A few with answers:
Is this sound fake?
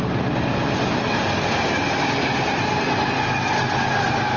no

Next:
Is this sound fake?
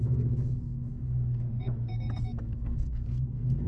yes